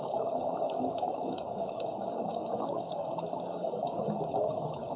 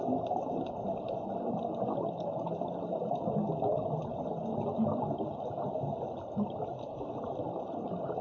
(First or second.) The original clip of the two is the second